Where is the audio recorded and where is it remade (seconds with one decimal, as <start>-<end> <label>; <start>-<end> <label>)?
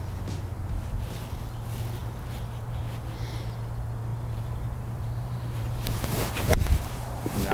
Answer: 0.0-2.0 recorded; 2.0-2.8 remade; 2.8-4.1 recorded; 4.1-7.5 remade